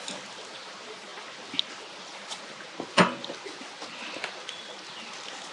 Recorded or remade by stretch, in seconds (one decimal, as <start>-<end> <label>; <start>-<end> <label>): 0.0-5.5 recorded